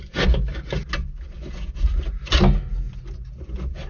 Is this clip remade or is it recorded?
recorded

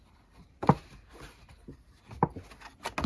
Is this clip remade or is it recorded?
recorded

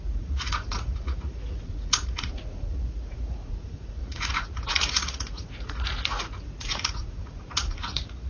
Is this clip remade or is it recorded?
remade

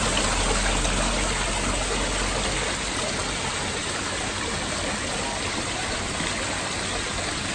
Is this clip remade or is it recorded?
recorded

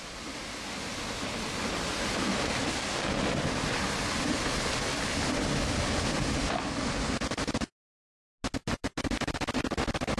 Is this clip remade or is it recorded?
recorded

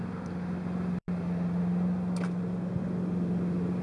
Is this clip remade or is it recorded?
recorded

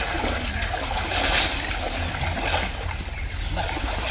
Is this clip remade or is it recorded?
recorded